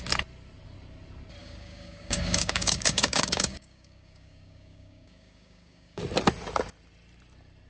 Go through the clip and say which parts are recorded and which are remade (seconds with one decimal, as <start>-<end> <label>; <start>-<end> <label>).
0.0-1.4 recorded; 1.4-6.0 remade; 6.0-7.7 recorded